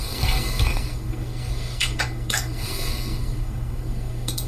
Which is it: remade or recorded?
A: remade